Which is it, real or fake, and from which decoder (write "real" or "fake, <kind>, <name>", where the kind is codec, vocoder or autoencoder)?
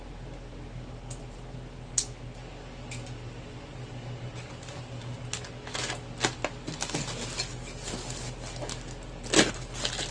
real